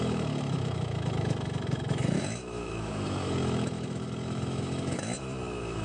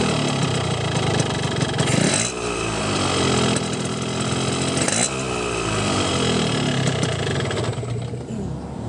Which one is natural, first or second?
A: second